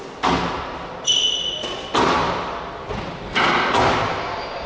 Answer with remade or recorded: recorded